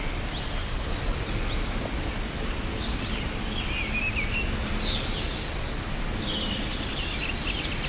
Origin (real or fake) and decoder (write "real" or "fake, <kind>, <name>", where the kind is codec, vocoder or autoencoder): real